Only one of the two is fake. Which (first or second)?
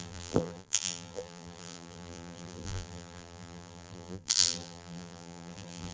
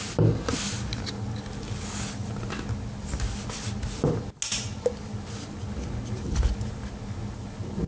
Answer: first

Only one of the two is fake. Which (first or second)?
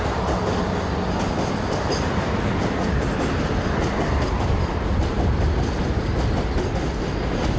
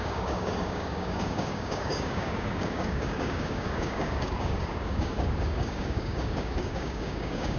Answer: second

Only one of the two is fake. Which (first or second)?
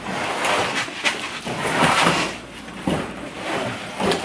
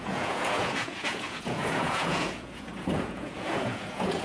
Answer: second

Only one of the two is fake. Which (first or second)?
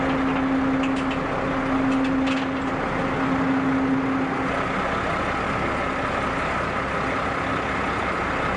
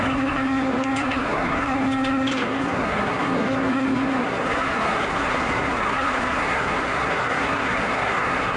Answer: second